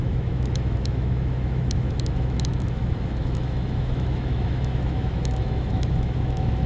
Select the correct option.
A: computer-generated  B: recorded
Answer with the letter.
A